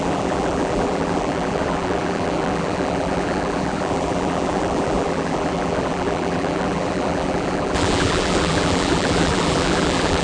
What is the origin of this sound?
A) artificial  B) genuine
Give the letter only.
A